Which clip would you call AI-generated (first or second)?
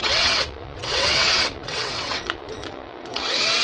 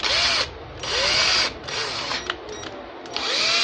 first